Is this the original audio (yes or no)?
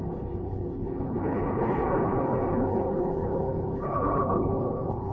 no